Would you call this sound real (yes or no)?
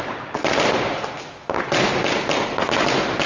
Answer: yes